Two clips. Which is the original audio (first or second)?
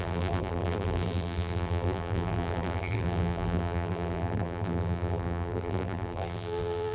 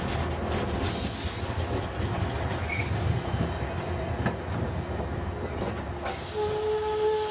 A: second